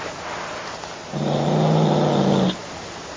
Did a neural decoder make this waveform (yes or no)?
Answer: no